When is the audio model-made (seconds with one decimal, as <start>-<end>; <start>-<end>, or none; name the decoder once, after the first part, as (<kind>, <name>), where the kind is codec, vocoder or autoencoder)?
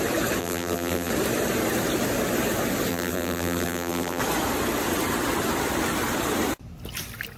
0.4-1.1 (vocoder, BigVGAN v2); 2.9-4.2